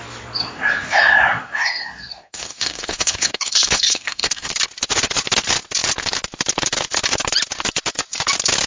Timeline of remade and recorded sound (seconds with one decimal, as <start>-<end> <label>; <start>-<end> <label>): 0.0-0.4 recorded; 0.4-4.5 remade; 4.5-8.7 recorded